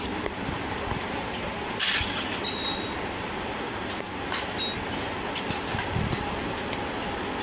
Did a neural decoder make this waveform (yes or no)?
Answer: no